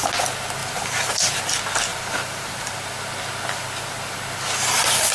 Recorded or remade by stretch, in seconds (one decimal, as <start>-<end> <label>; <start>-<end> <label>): 0.0-0.6 recorded; 0.6-1.3 remade; 1.3-1.9 recorded; 1.9-2.8 remade; 2.8-5.1 recorded